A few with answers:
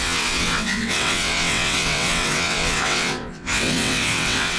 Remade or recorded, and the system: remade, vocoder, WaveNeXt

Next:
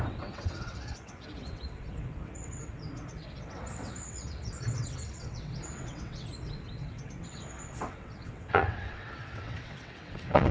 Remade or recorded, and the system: remade, vocoder, WaveNeXt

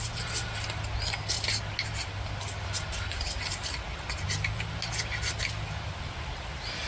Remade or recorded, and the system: recorded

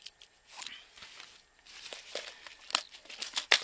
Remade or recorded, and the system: recorded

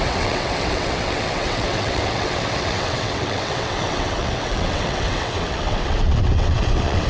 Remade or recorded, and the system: remade, vocoder, WaveNeXt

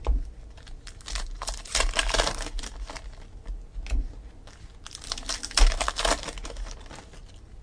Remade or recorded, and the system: recorded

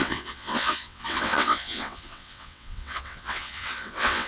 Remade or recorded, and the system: remade, vocoder, WaveNeXt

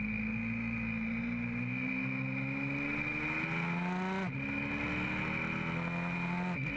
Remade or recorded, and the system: recorded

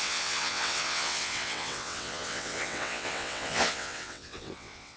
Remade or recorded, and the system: remade, vocoder, WaveNeXt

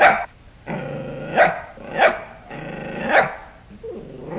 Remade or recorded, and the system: recorded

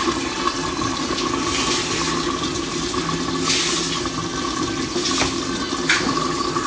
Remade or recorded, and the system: recorded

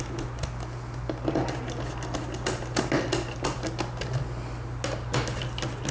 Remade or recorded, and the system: recorded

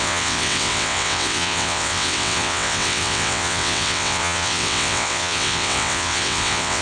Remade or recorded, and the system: remade, vocoder, WaveNeXt